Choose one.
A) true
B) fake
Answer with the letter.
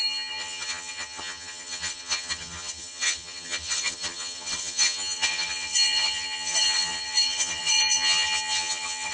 B